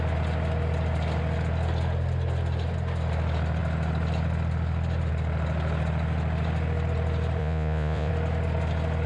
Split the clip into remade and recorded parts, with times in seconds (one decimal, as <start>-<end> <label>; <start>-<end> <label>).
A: 0.0-7.4 recorded; 7.4-8.1 remade; 8.1-9.1 recorded